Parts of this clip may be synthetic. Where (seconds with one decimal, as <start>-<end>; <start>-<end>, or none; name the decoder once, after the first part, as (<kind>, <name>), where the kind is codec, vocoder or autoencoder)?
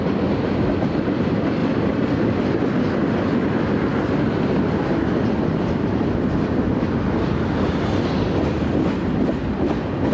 none